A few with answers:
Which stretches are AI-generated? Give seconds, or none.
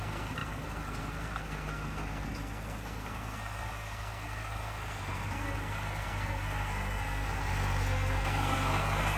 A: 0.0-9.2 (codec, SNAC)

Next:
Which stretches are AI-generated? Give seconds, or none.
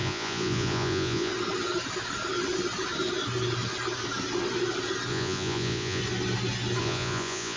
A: 0.0-1.3 (vocoder, Vocos); 5.1-6.0; 6.8-7.6